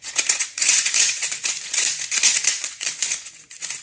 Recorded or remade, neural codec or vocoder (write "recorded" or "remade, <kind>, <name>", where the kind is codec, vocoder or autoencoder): remade, vocoder, Vocos